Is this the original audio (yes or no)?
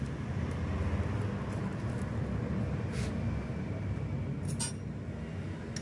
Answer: yes